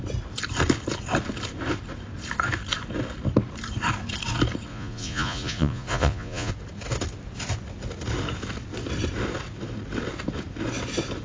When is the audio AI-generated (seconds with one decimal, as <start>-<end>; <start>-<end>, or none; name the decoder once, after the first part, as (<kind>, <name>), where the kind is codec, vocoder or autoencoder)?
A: 4.7-6.5 (vocoder, Vocos)